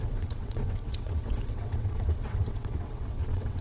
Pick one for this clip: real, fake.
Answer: fake